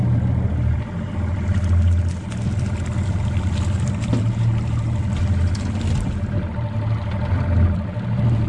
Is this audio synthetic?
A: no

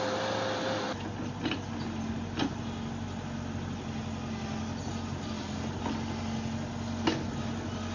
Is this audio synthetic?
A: no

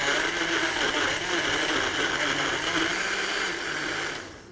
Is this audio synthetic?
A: no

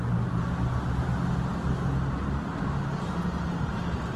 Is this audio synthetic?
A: no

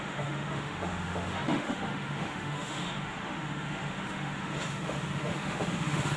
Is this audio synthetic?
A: yes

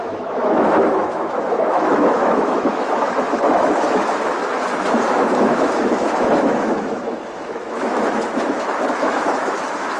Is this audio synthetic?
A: yes